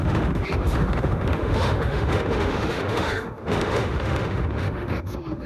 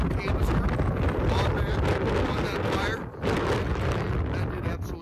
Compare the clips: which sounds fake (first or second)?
first